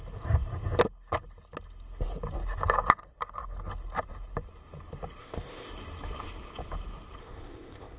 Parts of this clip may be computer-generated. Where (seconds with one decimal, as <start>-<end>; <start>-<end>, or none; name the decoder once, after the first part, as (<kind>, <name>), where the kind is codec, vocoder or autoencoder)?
5.2-5.7 (codec, ZipCodec); 7.2-8.0